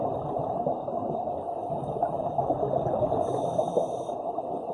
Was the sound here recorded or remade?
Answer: recorded